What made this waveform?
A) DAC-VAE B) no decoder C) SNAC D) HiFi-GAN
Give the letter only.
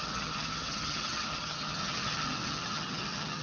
D